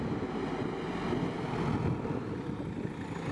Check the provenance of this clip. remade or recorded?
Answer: recorded